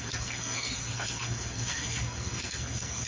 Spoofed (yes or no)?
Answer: yes